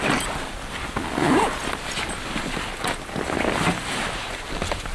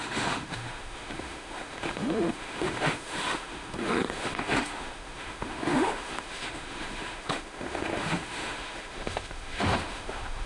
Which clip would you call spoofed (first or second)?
second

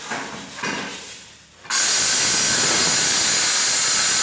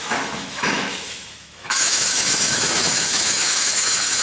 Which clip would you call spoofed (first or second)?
second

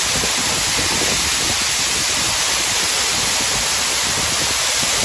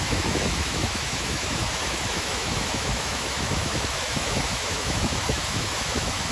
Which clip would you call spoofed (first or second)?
second